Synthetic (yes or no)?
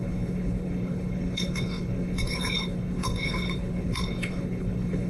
yes